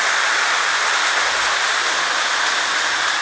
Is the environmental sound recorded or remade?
recorded